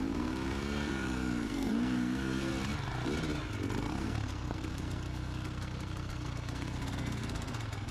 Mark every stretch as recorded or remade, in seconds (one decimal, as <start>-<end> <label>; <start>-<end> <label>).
0.0-2.5 remade; 2.5-3.9 recorded; 3.9-7.9 remade